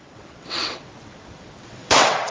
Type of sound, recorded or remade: remade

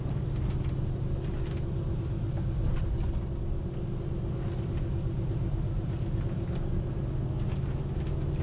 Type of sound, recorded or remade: recorded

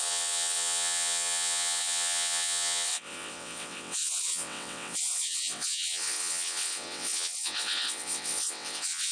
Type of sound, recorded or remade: remade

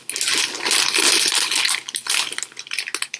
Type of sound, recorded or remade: recorded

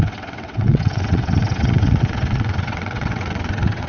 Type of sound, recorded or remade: remade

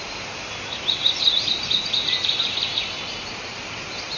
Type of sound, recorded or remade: recorded